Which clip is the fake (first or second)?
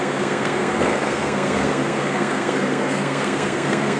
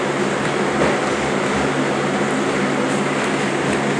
first